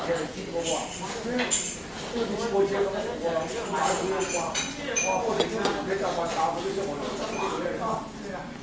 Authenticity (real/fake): real